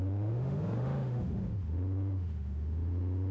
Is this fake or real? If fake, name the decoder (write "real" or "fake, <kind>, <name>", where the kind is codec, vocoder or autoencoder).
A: fake, autoencoder, DAC-VAE